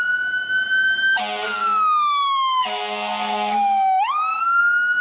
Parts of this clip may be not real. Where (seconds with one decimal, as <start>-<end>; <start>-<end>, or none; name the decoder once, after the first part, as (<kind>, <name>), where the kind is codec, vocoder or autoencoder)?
1.6-4.6 (codec, DAC)